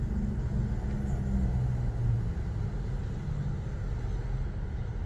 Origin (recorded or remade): recorded